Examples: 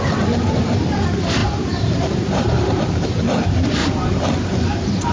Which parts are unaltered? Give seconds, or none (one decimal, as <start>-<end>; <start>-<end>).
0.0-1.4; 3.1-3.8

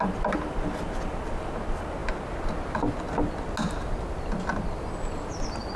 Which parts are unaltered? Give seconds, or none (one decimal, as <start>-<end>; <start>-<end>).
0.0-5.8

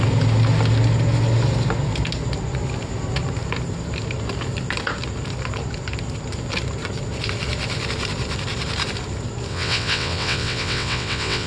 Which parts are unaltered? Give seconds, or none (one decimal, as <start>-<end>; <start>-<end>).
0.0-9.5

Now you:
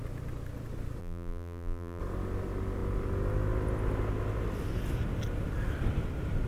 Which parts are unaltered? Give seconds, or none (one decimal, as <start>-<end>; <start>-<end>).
0.0-1.0; 2.0-6.5

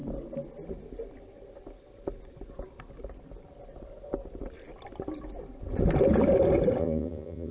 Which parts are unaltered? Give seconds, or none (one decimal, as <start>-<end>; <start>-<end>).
0.0-6.8